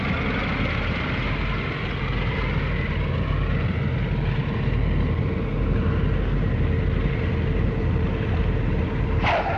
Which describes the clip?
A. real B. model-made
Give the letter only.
A